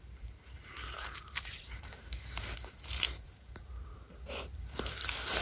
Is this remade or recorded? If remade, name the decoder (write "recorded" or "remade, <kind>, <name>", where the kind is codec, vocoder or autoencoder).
remade, vocoder, BigVGAN v2